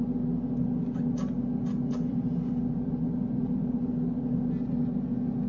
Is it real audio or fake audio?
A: real